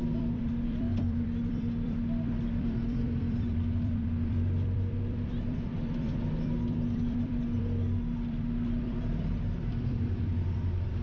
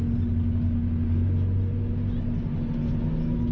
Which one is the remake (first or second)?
first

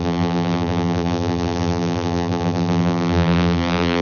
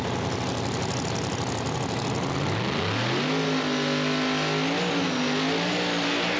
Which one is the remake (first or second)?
first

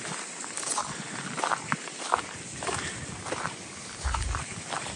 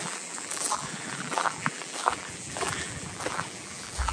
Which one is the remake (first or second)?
second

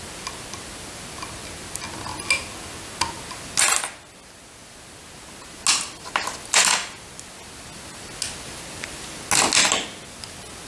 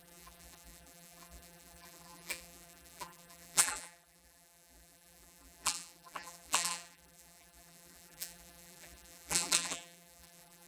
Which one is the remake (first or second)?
second